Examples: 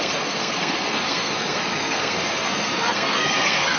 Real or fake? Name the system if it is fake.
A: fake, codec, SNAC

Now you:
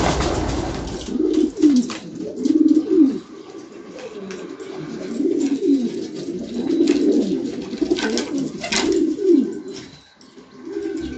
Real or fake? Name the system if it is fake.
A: real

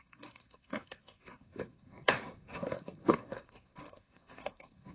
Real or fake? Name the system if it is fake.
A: fake, codec, SNAC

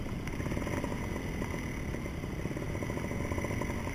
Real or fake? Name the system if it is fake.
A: real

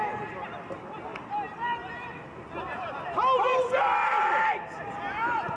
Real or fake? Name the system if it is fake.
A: real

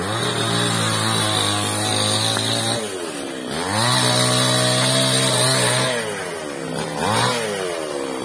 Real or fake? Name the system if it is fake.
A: real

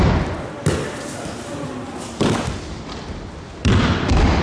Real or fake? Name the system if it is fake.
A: real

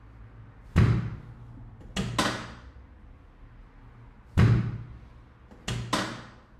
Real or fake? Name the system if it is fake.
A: real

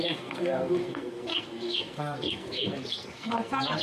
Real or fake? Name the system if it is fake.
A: fake, codec, SNAC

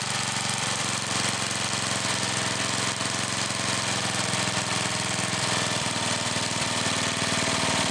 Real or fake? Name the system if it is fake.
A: real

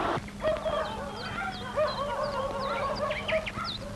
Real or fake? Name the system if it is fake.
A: real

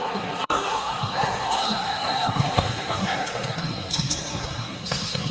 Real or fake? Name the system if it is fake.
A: fake, codec, SNAC